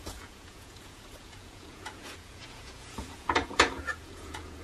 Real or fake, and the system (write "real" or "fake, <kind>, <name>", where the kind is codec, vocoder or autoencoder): fake, vocoder, Vocos